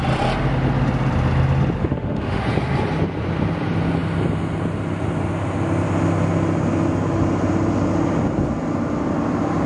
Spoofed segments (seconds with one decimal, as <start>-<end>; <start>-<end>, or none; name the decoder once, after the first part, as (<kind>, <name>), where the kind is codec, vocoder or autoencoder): 1.8-2.4 (autoencoder, DAC-VAE)